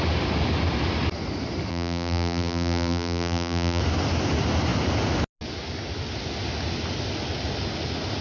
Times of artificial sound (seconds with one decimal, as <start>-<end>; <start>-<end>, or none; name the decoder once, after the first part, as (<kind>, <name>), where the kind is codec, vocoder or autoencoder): 1.7-3.8 (vocoder, BigVGAN v2)